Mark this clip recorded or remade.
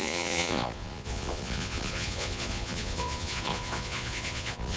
remade